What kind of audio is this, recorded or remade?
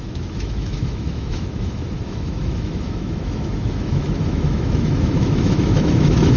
remade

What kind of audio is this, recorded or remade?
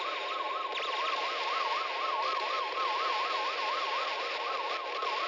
recorded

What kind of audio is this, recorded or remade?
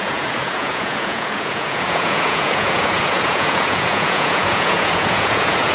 remade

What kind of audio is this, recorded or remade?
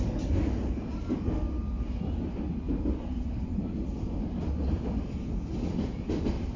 recorded